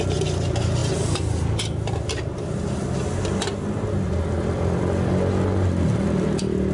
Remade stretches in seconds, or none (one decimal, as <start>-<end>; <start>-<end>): none